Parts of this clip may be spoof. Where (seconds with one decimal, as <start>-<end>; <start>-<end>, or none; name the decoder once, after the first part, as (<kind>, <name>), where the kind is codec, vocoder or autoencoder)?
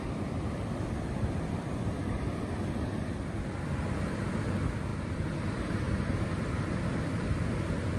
0.0-1.6 (vocoder, BigVGAN v2); 2.0-4.2